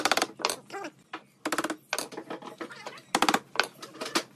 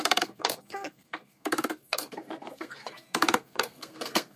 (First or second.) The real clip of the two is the first